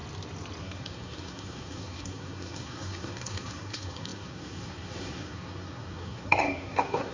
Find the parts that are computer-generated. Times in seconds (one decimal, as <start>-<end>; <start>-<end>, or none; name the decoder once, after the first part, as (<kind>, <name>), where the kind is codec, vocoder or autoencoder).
0.6-7.1 (codec, SNAC)